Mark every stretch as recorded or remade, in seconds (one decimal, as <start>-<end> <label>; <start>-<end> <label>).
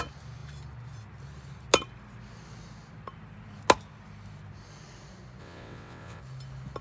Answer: 0.0-5.4 recorded; 5.4-6.2 remade; 6.2-6.8 recorded